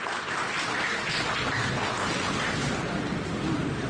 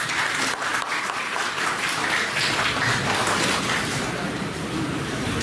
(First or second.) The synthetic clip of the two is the second